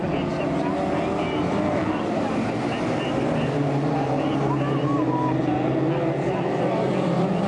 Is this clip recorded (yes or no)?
yes